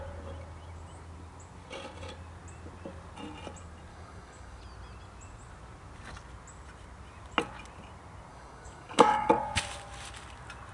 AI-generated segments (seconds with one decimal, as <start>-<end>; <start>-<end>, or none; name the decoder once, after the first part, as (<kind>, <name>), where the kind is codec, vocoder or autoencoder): 3.9-4.6 (codec, DAC); 8.3-9.3